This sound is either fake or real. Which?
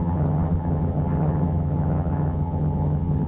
fake